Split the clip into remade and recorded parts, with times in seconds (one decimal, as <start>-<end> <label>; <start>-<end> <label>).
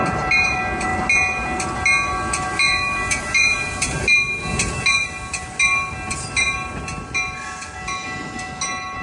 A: 0.0-9.0 recorded